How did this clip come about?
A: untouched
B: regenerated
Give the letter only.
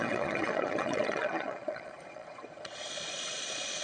B